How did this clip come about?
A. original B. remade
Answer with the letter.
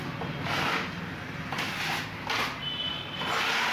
A